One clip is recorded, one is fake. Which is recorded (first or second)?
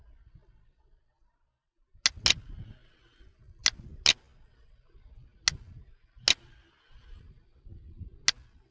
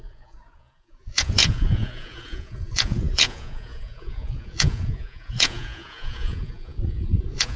first